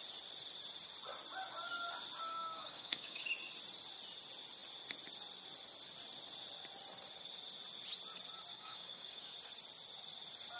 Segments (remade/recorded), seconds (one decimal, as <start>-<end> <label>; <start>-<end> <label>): 0.0-2.3 recorded; 2.3-3.3 remade; 3.3-8.5 recorded; 8.5-9.3 remade; 9.3-10.6 recorded